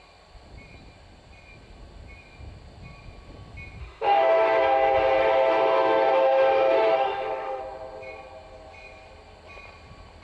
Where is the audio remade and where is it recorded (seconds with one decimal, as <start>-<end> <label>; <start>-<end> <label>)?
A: 0.0-3.8 recorded; 3.8-4.6 remade; 4.6-5.2 recorded; 5.2-7.6 remade; 7.6-10.2 recorded